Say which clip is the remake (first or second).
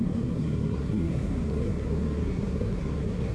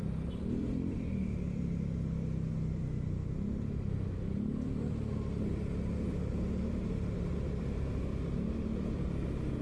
first